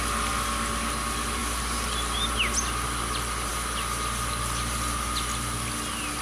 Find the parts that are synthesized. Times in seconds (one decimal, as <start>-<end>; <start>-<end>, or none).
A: none